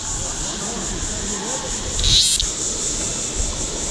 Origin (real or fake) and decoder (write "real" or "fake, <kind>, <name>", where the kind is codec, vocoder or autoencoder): real